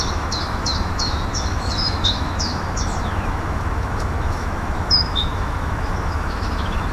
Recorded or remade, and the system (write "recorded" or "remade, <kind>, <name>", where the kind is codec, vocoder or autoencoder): remade, autoencoder, DAC-VAE